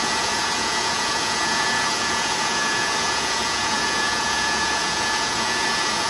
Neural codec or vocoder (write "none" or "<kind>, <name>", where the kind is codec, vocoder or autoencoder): vocoder, Vocos